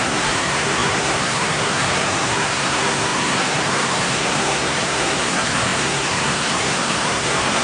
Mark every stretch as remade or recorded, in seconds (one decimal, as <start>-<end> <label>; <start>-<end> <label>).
0.0-7.6 remade